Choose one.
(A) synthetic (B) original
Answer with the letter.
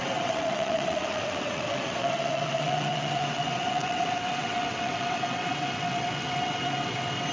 A